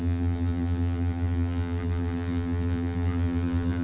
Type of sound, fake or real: fake